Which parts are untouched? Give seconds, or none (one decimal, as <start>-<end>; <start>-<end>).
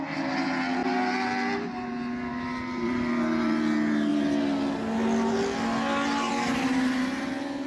0.0-7.7